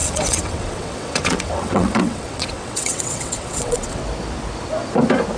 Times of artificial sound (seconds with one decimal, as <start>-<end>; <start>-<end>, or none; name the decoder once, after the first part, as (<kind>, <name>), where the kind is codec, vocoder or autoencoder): 0.0-4.0 (vocoder, WaveNeXt)